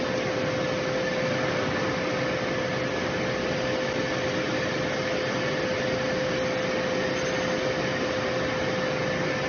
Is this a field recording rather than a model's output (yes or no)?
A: yes